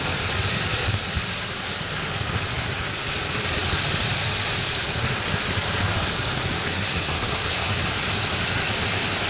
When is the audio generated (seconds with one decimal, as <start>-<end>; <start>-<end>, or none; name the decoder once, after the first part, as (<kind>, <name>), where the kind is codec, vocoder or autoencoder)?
6.7-7.7 (codec, SNAC)